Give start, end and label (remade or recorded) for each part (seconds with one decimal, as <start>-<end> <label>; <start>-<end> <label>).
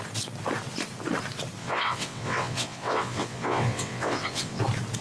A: 0.0-1.6 recorded; 1.6-4.6 remade; 4.6-5.0 recorded